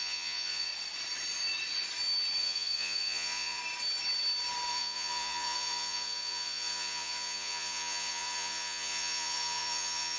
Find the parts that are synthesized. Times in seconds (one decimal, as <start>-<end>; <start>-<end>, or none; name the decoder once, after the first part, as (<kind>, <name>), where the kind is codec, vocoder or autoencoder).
0.0-0.7 (vocoder, Vocos); 2.4-3.6; 4.7-10.2